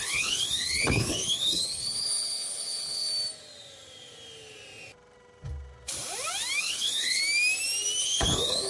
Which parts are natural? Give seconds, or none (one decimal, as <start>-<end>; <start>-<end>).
3.1-6.6; 7.2-8.0